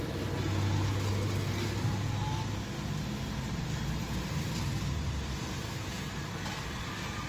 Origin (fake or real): real